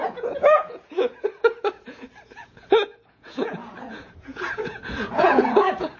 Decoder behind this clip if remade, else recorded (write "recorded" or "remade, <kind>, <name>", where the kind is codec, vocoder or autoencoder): remade, vocoder, Vocos